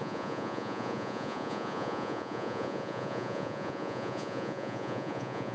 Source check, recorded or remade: remade